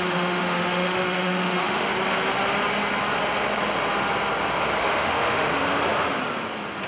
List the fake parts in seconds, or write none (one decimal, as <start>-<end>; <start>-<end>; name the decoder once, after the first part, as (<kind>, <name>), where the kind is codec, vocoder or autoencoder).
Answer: 0.0-1.9 (autoencoder, DAC-VAE); 4.8-5.5